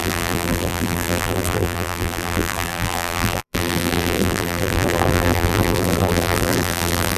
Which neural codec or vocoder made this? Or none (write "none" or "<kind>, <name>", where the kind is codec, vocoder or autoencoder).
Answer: vocoder, BigVGAN v2